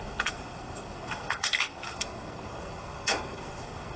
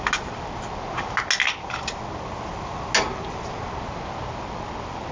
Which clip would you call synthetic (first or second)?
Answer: first